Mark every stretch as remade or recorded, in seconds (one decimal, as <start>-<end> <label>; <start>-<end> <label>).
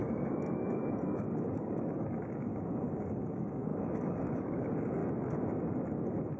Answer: 0.0-2.5 remade; 2.5-3.1 recorded; 3.1-5.0 remade; 5.0-6.4 recorded